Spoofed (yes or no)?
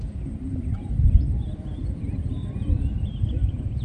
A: yes